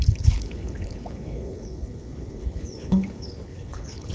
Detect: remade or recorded remade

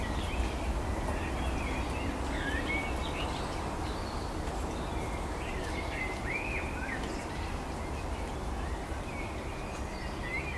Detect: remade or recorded recorded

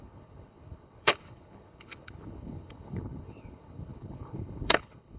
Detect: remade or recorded remade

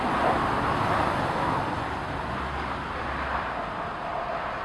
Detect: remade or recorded recorded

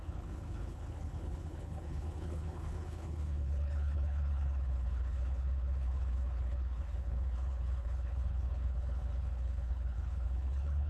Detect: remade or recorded remade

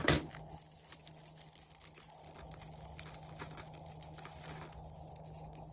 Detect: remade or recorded recorded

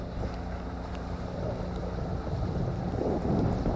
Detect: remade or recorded recorded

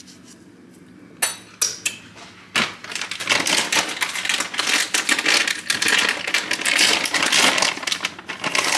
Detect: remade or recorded recorded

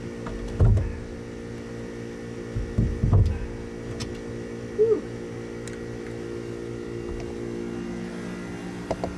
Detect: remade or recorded recorded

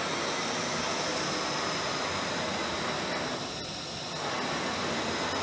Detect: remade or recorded recorded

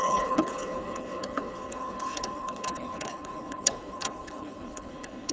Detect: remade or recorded remade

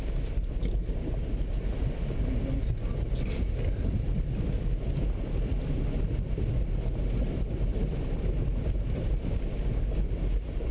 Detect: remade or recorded recorded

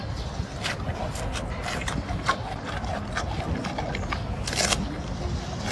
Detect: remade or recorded recorded